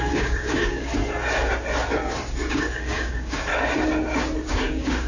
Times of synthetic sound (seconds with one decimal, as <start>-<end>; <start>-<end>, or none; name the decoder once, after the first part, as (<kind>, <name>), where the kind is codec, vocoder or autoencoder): 0.0-0.9 (codec, DAC); 2.5-3.5; 4.5-5.1